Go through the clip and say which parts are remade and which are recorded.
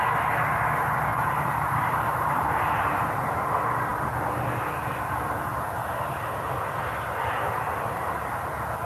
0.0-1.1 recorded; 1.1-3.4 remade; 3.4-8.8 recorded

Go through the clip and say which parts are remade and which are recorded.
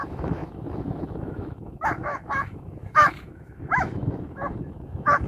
0.0-5.3 remade